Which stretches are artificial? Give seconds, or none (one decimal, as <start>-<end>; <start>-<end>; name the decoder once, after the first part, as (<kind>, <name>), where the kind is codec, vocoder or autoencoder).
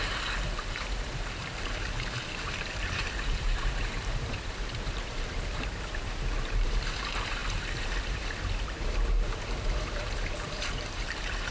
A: 0.0-11.5 (vocoder, BigVGAN v2)